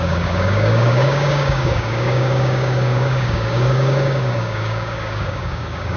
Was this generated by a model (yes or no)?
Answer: yes